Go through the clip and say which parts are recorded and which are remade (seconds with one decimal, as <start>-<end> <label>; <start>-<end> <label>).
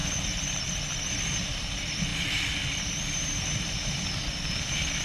0.0-0.7 remade; 0.7-5.0 recorded